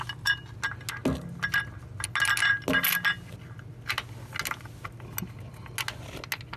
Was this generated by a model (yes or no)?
no